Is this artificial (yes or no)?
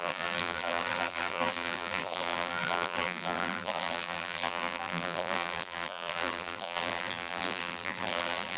yes